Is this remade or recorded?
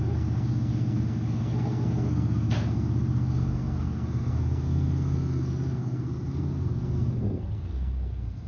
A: remade